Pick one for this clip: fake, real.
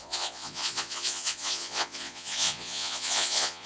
fake